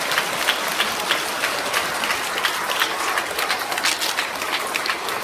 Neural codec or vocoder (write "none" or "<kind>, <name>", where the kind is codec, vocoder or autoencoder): none